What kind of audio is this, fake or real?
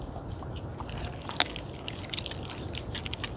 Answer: real